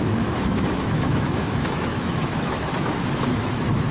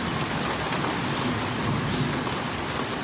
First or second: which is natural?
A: second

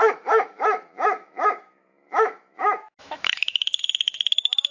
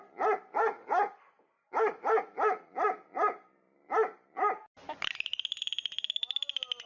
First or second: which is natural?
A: second